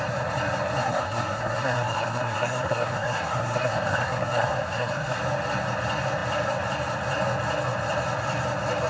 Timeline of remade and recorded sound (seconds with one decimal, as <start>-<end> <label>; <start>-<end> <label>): 0.0-0.8 recorded; 0.8-5.2 remade; 5.2-8.9 recorded